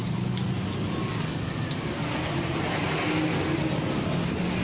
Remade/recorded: recorded